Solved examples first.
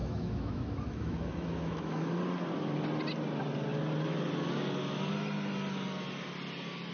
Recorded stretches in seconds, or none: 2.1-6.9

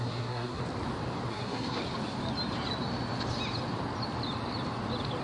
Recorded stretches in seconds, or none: 0.6-1.3; 1.8-5.2